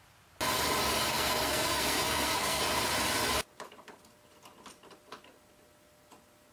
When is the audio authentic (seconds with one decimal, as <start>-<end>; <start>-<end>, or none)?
0.0-1.1; 2.6-6.5